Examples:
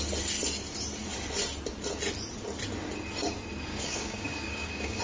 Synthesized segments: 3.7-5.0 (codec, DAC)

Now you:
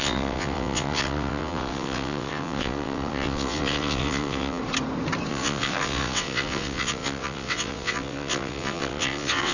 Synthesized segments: 0.0-4.6 (vocoder, WaveNeXt); 5.3-9.5